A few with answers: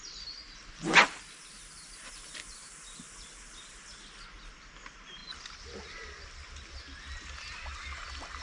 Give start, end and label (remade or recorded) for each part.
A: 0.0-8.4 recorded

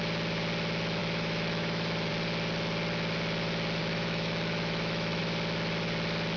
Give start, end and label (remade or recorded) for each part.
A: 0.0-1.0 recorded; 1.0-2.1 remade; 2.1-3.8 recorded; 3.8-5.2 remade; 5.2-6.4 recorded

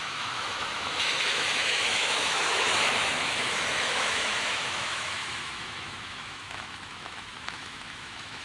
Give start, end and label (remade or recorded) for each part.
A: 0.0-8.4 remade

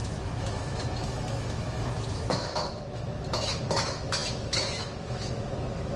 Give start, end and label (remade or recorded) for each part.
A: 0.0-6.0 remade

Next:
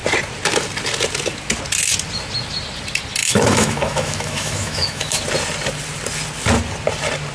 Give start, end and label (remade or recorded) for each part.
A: 0.0-3.2 recorded; 3.2-5.2 remade; 5.2-7.3 recorded

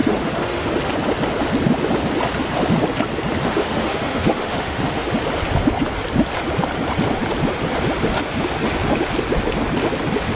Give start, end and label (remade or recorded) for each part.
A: 0.0-0.7 remade; 0.7-3.4 recorded; 3.4-5.1 remade; 5.1-10.4 recorded

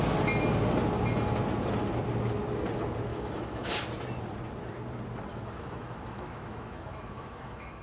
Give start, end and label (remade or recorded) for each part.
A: 0.0-3.1 recorded; 3.1-3.7 remade; 3.7-5.3 recorded; 5.3-7.8 remade

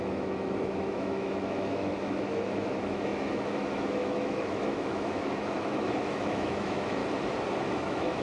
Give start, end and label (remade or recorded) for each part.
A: 0.0-7.0 remade; 7.0-7.7 recorded; 7.7-8.2 remade